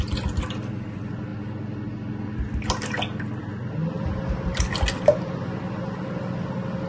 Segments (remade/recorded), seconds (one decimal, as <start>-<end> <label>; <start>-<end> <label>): 0.0-6.9 recorded